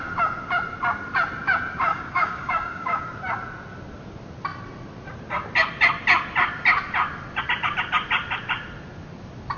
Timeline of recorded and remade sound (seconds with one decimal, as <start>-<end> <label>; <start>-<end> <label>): 0.0-1.9 recorded; 1.9-3.0 remade; 3.0-9.6 recorded

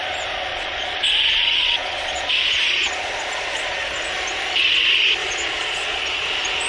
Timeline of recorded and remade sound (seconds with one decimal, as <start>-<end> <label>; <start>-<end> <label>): 0.0-0.5 recorded; 0.5-3.9 remade; 3.9-5.2 recorded; 5.2-6.0 remade; 6.0-6.7 recorded

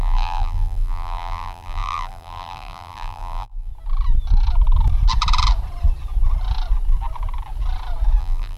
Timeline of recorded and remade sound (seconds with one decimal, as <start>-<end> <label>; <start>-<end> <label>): 0.0-3.7 remade; 3.7-8.2 recorded; 8.2-8.6 remade

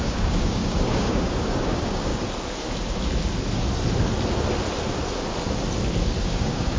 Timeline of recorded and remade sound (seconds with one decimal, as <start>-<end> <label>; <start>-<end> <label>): 0.0-2.1 remade; 2.1-6.2 recorded; 6.2-6.8 remade

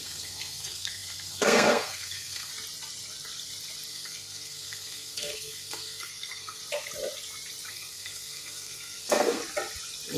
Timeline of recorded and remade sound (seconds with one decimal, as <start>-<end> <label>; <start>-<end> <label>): 0.0-2.5 remade; 2.5-3.9 recorded; 3.9-6.6 remade; 6.6-7.7 recorded; 7.7-9.4 remade; 9.4-10.2 recorded

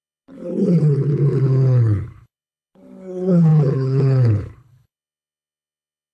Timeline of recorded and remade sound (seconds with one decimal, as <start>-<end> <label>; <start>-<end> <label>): 0.0-6.1 remade

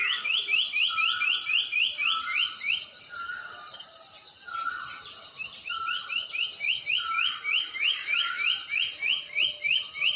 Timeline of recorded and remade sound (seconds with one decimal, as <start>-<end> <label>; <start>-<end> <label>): 0.0-10.2 recorded

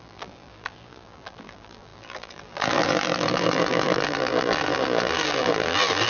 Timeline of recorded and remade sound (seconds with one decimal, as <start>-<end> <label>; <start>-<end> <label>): 0.0-6.1 remade